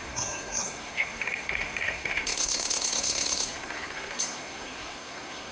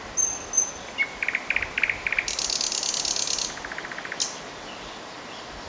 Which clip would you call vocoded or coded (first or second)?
first